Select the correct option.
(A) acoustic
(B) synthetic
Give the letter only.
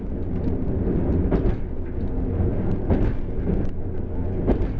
A